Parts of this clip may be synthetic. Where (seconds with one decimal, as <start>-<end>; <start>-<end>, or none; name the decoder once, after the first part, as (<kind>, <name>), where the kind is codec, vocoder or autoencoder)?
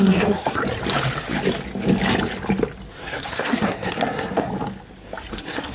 0.0-0.6 (codec, SNAC); 2.9-4.5; 5.3-5.7